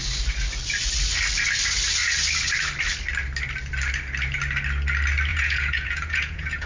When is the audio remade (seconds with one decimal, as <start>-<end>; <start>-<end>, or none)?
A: 5.3-6.7